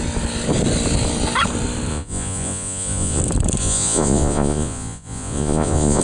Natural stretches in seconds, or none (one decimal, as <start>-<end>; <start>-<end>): 0.0-1.9; 3.2-3.6